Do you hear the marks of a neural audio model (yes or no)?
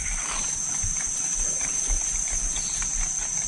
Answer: no